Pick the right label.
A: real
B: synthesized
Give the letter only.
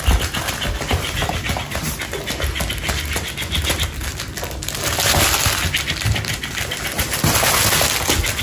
A